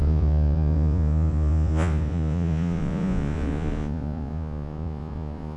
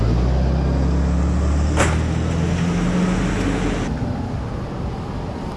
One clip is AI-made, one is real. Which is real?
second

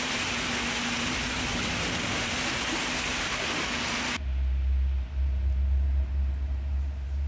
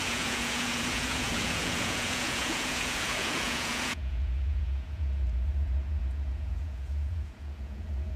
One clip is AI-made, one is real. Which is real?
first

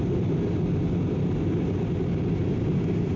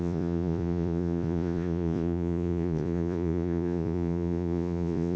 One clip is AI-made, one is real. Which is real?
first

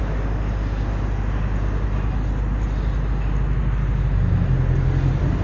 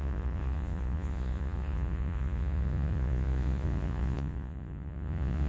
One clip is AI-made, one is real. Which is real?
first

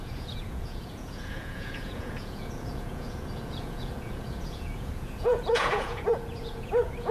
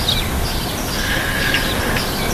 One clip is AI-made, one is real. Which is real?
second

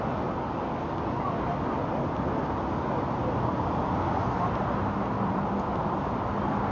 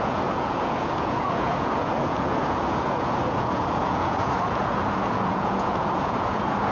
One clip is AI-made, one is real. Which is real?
first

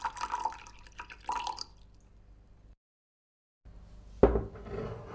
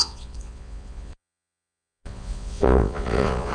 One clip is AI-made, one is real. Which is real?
first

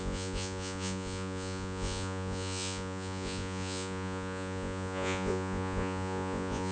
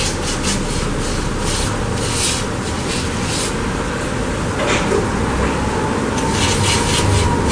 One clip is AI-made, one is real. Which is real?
second